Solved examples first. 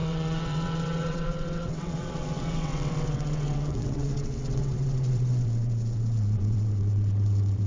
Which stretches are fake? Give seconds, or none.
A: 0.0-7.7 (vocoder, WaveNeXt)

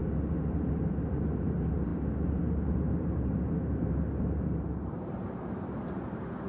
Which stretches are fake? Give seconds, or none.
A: 0.7-6.5 (vocoder, BigVGAN v2)

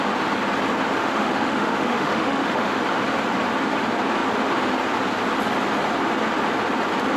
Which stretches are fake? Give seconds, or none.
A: 1.0-2.8 (autoencoder, DAC-VAE)

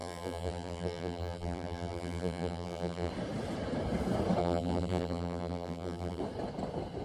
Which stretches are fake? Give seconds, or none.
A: 0.0-3.1 (vocoder, BigVGAN v2); 4.4-6.2